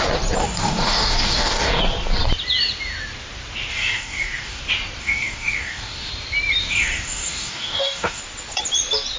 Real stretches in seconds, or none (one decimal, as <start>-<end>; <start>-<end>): 0.0-0.4; 1.8-3.7; 4.6-5.0; 6.1-6.6; 8.2-9.2